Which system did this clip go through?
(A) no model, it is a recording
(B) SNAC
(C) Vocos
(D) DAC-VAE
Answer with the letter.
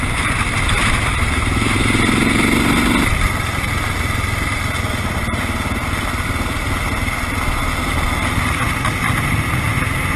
A